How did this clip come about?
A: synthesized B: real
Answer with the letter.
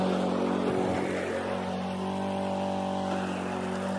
B